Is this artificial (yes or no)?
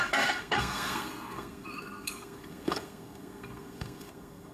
yes